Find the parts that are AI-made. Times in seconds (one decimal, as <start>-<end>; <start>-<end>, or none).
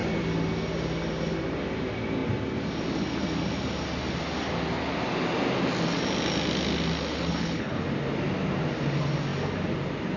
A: 7.1-7.8